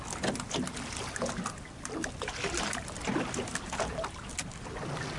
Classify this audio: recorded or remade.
recorded